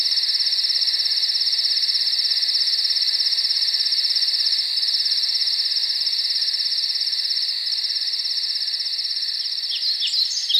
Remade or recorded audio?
recorded